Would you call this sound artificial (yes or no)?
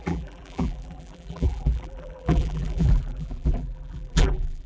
yes